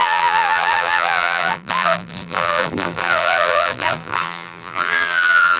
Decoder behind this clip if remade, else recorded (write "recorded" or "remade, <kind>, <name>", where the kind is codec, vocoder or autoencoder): remade, vocoder, BigVGAN v2